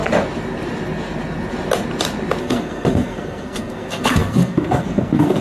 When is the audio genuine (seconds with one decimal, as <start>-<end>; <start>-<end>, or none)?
0.0-2.4